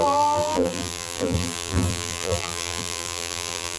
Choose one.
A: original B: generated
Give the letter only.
B